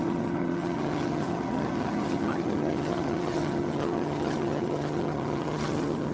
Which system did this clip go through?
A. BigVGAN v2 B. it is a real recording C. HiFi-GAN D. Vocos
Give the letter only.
C